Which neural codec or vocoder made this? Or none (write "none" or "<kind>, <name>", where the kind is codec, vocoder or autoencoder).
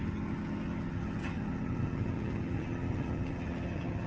vocoder, HiFi-GAN